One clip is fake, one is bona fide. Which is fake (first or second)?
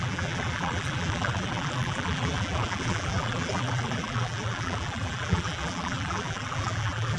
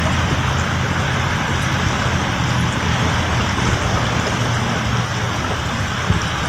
first